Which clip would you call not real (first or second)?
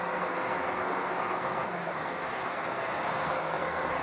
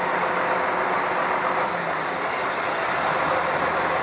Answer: first